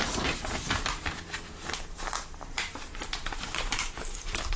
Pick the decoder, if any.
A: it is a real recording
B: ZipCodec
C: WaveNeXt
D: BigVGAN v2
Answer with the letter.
D